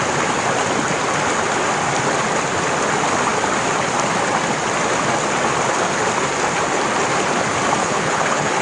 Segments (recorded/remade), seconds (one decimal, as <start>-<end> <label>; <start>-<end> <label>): 0.0-7.8 recorded; 7.8-8.6 remade